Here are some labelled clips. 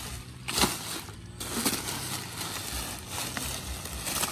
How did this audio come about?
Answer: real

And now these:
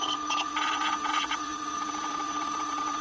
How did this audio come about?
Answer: fake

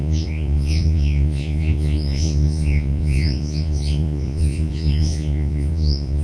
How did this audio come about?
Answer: fake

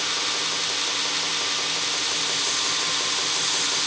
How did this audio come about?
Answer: real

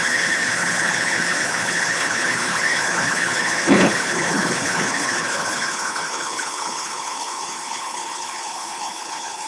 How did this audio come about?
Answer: fake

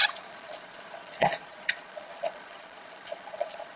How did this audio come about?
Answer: fake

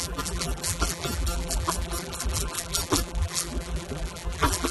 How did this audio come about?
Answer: fake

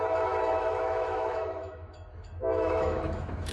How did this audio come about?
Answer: fake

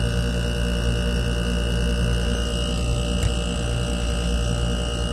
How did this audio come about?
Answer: real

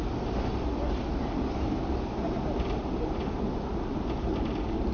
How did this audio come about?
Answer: real